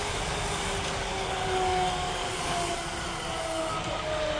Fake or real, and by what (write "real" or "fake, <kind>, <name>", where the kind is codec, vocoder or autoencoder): fake, codec, DAC